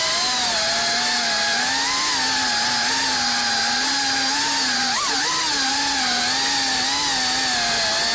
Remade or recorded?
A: recorded